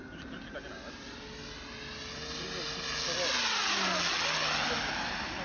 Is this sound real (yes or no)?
yes